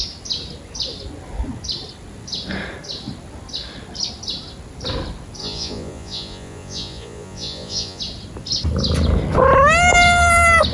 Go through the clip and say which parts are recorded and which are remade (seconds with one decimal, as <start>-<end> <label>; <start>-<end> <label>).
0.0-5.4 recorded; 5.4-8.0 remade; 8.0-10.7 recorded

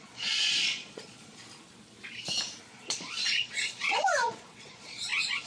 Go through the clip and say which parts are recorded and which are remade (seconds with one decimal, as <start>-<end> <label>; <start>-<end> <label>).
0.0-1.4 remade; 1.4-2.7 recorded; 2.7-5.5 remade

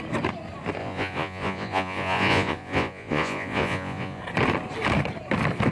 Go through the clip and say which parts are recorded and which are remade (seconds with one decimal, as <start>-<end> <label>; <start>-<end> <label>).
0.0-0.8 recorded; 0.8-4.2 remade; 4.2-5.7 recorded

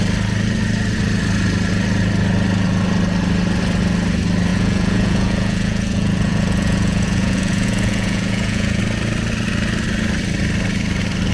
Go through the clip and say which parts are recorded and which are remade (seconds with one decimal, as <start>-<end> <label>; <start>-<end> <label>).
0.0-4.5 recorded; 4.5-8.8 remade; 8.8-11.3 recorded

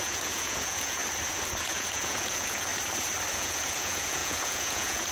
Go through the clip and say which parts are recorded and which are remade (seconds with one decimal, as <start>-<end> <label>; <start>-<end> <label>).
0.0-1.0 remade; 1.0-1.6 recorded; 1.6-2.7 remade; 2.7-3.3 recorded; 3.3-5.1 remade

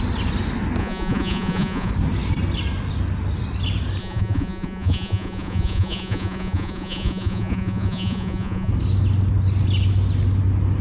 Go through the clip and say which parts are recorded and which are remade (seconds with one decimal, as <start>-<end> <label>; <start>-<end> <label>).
0.0-0.8 recorded; 0.8-1.9 remade; 1.9-4.0 recorded; 4.0-8.7 remade; 8.7-10.8 recorded